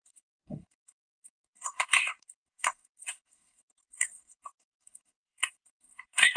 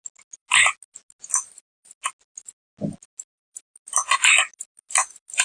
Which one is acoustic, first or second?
second